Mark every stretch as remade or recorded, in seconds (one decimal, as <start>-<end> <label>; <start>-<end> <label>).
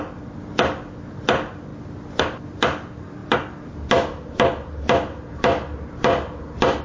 0.0-6.8 recorded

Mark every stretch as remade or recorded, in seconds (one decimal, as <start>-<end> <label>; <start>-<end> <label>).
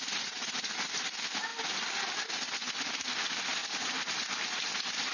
0.0-1.5 recorded; 1.5-2.3 remade; 2.3-5.1 recorded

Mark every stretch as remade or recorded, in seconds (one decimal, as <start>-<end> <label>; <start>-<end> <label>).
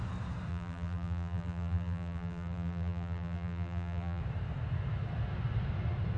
0.0-0.5 recorded; 0.5-4.2 remade; 4.2-6.2 recorded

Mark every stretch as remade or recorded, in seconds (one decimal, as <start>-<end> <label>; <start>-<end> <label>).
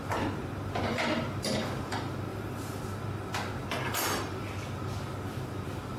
0.0-2.3 recorded; 2.3-2.8 remade; 2.8-6.0 recorded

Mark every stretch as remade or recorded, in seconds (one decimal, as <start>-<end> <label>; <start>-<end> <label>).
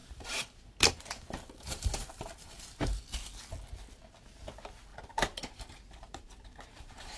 0.0-3.0 remade; 3.0-4.9 recorded; 4.9-7.2 remade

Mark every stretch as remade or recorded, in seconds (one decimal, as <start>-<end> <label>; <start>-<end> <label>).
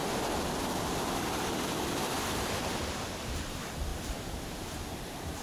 0.0-3.2 recorded; 3.2-3.9 remade; 3.9-4.4 recorded; 4.4-5.4 remade